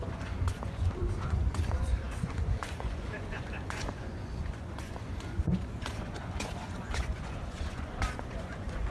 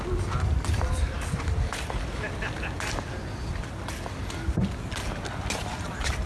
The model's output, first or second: first